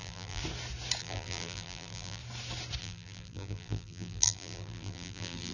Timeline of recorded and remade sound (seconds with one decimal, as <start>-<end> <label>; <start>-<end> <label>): 0.0-0.4 remade; 0.4-1.0 recorded; 1.0-2.2 remade; 2.2-2.8 recorded; 2.8-5.5 remade